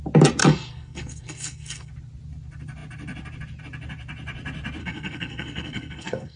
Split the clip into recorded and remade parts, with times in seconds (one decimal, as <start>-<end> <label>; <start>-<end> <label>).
0.0-0.4 recorded; 0.4-1.9 remade; 1.9-4.8 recorded; 4.8-6.4 remade